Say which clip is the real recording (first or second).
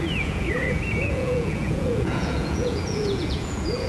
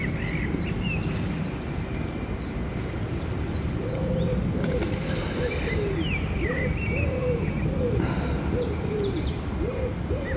second